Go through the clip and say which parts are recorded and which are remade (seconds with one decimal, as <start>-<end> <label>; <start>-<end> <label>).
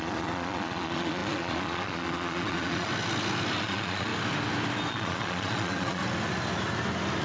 0.0-2.9 remade; 2.9-3.6 recorded; 3.6-4.1 remade; 4.1-4.9 recorded; 4.9-6.0 remade; 6.0-7.2 recorded